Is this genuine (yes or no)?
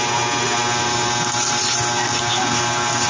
yes